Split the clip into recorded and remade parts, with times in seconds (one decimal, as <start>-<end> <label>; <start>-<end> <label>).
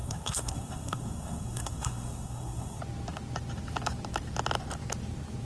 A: 0.0-2.8 remade; 2.8-5.4 recorded